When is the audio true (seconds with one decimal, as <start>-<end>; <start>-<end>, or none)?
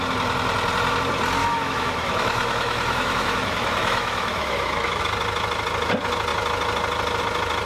0.0-1.4; 5.0-7.7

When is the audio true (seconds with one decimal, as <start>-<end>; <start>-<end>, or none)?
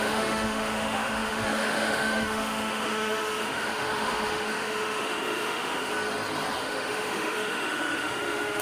5.9-6.6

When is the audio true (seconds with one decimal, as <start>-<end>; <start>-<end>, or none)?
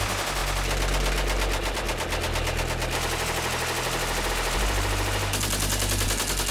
0.0-6.5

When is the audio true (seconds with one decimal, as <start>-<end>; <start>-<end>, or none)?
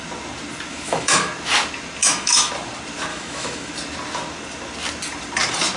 0.0-0.7; 1.3-2.0; 2.5-3.1; 3.7-5.8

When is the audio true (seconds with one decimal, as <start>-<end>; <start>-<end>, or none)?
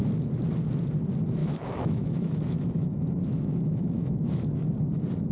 0.0-1.4; 4.6-5.3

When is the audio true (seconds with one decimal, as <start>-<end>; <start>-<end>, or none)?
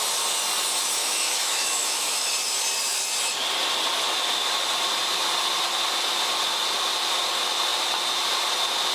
0.0-1.0; 2.3-8.9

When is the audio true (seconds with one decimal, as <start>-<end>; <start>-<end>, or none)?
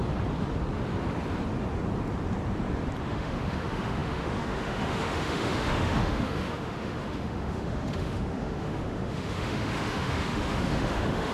0.0-3.0